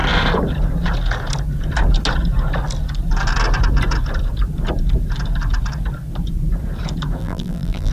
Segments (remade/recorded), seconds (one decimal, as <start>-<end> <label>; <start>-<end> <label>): 0.0-7.2 recorded; 7.2-7.9 remade